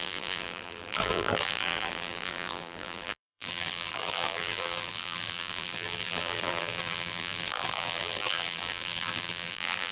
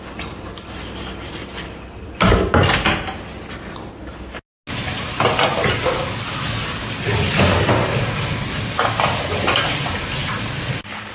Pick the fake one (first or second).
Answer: first